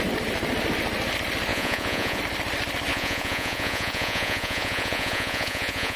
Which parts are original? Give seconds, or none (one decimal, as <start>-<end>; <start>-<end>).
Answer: 0.0-1.5; 2.2-2.9